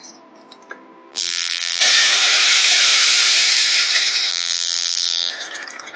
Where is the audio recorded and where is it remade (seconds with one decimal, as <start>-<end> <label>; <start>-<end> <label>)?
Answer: 0.0-1.1 recorded; 1.1-1.8 remade; 1.8-4.3 recorded; 4.3-5.3 remade; 5.3-6.0 recorded